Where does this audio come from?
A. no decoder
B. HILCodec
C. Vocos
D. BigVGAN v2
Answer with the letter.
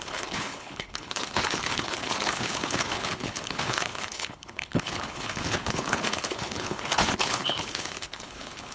B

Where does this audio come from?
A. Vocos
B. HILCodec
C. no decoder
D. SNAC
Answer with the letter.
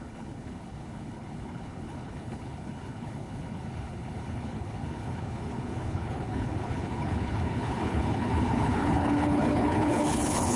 B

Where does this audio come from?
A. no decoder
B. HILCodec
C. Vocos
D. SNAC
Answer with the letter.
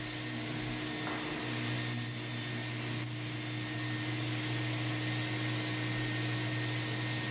A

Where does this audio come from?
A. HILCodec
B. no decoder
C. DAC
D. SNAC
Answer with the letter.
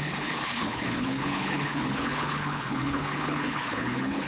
A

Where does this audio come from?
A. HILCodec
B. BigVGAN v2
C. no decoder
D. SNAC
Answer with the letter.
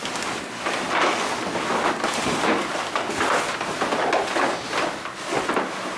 C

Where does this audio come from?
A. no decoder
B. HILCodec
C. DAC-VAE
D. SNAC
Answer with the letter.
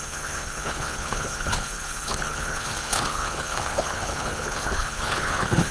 B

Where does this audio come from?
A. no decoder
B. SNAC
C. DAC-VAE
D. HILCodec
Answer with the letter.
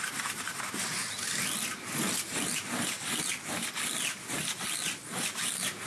A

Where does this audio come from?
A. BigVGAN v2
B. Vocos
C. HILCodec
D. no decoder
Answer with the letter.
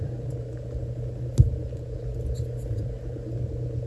D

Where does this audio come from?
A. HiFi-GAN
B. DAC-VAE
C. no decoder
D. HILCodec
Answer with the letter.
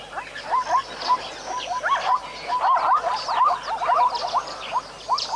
C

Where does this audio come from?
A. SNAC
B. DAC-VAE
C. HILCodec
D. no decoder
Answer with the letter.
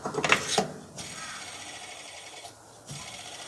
D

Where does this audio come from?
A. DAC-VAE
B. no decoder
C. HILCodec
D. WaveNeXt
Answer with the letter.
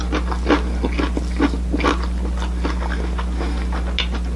B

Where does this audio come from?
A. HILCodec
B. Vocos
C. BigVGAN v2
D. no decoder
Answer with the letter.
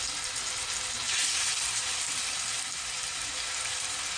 D